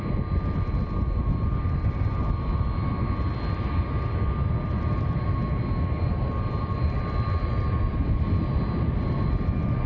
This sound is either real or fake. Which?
real